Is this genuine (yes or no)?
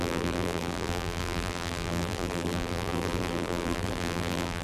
no